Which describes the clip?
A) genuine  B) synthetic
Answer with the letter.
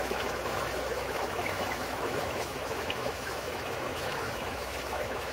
B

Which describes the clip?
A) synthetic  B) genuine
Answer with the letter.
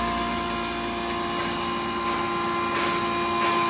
B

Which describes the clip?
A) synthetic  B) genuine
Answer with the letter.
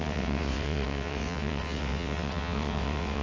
A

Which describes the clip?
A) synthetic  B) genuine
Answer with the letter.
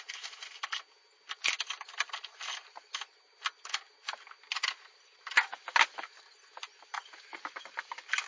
B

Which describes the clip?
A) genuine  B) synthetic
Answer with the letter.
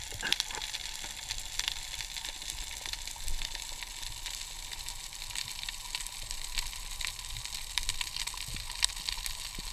A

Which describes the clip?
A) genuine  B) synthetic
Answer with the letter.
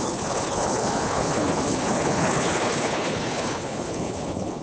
B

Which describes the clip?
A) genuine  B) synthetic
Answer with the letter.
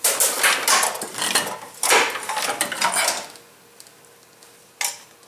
A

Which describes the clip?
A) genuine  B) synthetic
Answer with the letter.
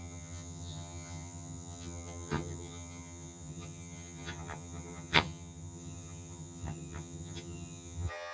B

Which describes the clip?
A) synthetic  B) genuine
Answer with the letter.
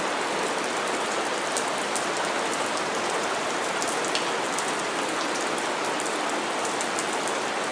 B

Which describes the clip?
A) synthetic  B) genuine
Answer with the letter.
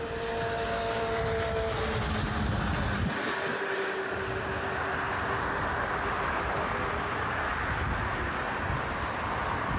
B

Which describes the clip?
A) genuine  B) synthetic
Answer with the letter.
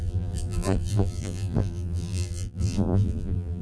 B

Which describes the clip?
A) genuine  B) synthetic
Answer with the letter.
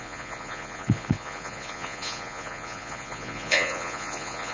B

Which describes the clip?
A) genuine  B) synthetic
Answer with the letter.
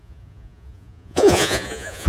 B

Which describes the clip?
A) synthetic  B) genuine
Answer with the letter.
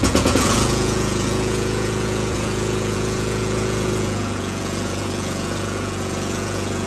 A